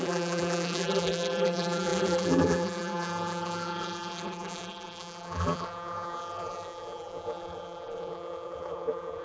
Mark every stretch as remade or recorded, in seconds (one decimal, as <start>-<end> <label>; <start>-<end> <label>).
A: 0.0-9.2 remade

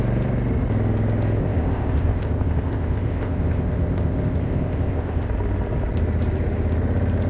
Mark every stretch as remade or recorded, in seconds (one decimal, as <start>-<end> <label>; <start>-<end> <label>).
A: 0.0-1.4 recorded; 1.4-5.3 remade; 5.3-7.3 recorded